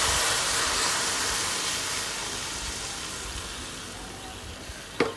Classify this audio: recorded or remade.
recorded